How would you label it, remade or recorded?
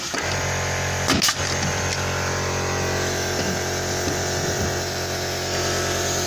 recorded